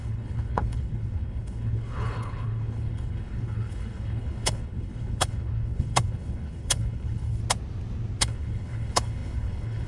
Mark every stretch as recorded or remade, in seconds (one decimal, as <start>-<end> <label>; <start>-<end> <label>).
0.0-7.4 remade; 7.4-8.2 recorded; 8.2-9.9 remade

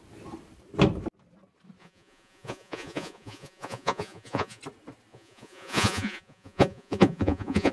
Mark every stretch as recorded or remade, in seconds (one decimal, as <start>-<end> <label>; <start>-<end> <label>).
0.0-1.8 recorded; 1.8-4.6 remade; 4.6-5.1 recorded; 5.1-7.7 remade

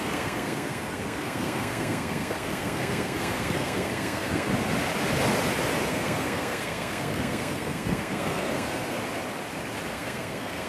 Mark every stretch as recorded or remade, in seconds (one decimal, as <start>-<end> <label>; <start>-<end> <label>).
0.0-4.5 remade; 4.5-5.9 recorded; 5.9-9.0 remade; 9.0-9.9 recorded; 9.9-10.7 remade

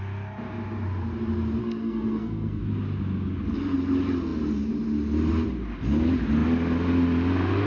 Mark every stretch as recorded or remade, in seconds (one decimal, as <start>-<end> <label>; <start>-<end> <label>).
0.0-1.6 recorded; 1.6-2.6 remade; 2.6-7.7 recorded

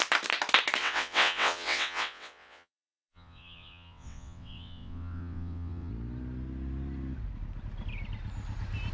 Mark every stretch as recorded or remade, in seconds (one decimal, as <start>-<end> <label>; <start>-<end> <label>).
0.0-0.8 recorded; 0.8-5.9 remade; 5.9-8.9 recorded